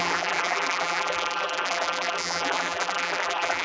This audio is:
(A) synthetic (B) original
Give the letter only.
A